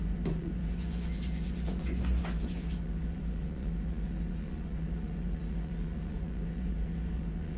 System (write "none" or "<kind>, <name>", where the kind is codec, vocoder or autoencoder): vocoder, Vocos